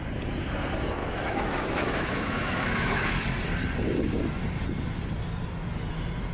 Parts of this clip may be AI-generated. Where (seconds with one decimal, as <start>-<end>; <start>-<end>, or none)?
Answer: 1.0-3.1